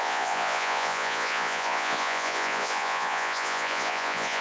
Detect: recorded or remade remade